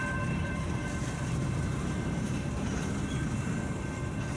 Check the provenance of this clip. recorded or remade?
remade